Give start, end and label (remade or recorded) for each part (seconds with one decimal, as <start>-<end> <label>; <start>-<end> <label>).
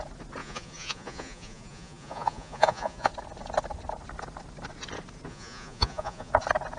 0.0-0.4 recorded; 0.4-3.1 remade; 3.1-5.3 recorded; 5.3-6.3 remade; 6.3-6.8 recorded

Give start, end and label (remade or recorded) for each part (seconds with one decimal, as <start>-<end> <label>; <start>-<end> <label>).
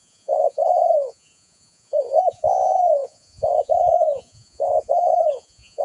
0.0-5.8 remade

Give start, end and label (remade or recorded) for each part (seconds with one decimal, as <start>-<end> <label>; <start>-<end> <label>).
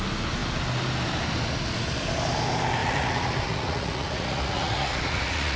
0.0-2.8 recorded; 2.8-5.6 remade